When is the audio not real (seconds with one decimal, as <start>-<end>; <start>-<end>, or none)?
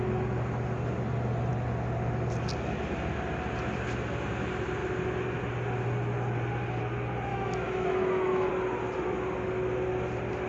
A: 7.3-8.5